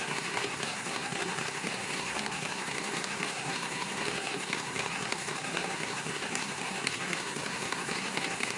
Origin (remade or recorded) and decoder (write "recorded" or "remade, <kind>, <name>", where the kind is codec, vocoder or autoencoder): remade, codec, SNAC